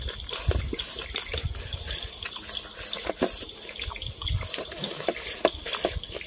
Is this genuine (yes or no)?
yes